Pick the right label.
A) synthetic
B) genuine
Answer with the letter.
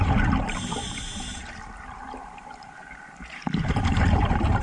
A